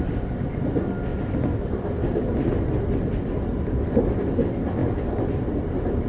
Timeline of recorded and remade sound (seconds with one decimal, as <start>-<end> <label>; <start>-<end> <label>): 0.0-1.1 recorded; 1.1-3.1 remade; 3.1-3.5 recorded; 3.5-4.1 remade; 4.1-6.1 recorded